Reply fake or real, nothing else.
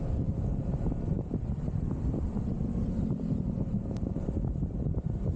fake